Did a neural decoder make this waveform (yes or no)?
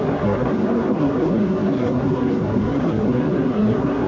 yes